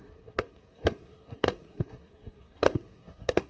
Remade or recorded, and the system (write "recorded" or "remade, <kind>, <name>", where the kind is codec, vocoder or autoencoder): remade, codec, SNAC